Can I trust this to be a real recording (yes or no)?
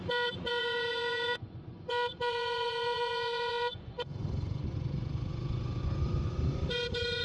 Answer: no